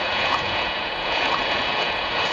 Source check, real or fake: fake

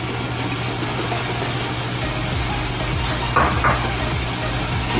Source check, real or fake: real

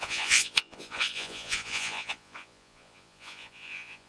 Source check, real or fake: fake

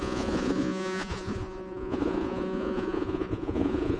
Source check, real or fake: fake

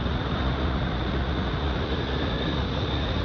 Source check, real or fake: fake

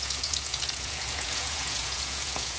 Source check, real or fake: fake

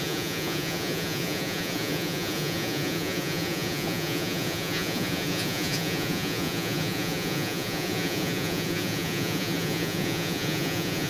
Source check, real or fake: fake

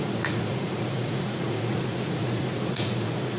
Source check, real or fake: fake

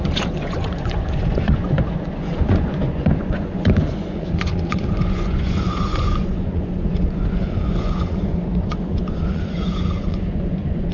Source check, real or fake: fake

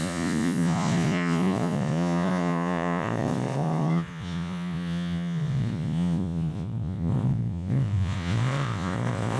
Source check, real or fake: fake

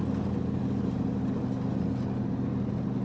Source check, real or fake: real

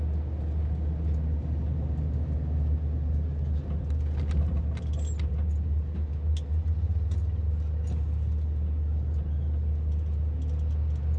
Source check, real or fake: real